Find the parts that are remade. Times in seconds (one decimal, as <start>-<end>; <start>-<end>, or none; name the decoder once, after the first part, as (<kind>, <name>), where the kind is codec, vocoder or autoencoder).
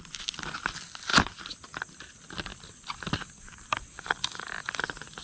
none